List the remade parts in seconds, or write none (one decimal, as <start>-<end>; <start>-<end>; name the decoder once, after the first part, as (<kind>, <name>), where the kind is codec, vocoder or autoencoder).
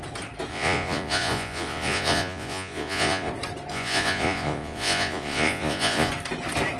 0.5-3.3 (vocoder, Vocos); 3.7-6.1